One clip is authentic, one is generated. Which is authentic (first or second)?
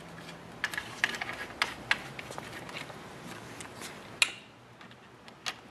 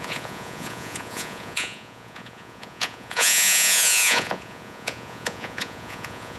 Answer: first